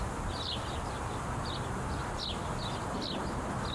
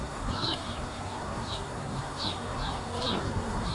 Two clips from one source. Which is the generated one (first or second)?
second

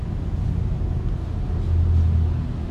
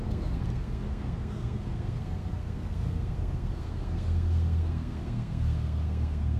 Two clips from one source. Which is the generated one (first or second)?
second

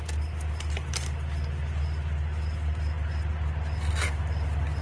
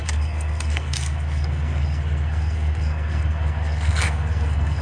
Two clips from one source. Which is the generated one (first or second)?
second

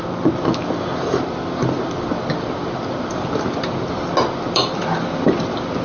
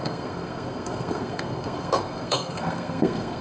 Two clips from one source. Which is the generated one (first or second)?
second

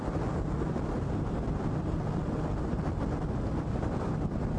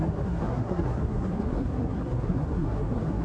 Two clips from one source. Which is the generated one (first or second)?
second